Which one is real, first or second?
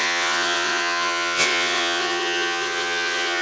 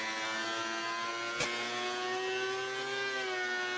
second